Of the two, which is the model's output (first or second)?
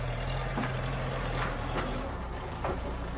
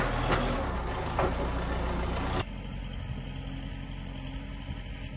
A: first